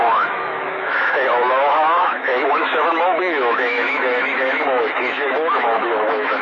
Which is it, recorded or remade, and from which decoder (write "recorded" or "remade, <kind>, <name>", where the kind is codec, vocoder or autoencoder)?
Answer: remade, autoencoder, DAC-VAE